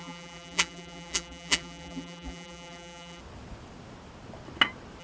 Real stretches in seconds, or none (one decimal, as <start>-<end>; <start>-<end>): 3.2-5.0